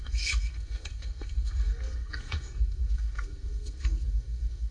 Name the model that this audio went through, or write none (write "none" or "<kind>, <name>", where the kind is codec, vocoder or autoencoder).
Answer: codec, SNAC